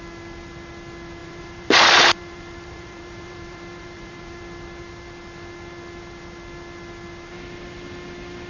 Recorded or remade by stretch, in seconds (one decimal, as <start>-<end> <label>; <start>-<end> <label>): 0.0-1.2 recorded; 1.2-4.4 remade; 4.4-8.5 recorded